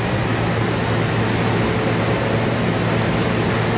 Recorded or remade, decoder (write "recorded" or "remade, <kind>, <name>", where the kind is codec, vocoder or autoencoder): recorded